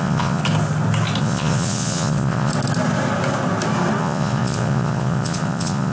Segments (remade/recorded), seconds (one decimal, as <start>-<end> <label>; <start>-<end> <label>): 0.0-0.4 remade; 0.4-1.2 recorded; 1.2-2.5 remade; 2.5-4.0 recorded; 4.0-5.9 remade